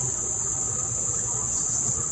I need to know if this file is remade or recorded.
remade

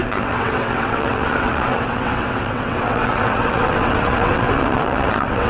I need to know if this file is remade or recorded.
remade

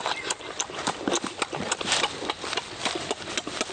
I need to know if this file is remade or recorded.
recorded